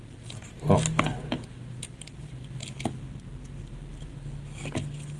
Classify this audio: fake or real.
real